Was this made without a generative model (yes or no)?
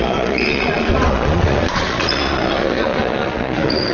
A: no